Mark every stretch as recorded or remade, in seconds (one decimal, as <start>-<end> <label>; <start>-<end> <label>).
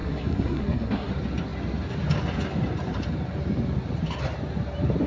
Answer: 0.0-1.1 remade; 1.1-5.1 recorded